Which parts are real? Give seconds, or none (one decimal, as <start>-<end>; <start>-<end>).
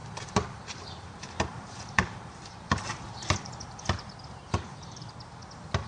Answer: 3.5-5.9